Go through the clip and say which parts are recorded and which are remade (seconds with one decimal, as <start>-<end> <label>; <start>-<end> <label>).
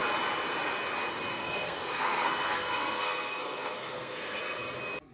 0.0-1.3 recorded; 1.3-4.4 remade; 4.4-5.1 recorded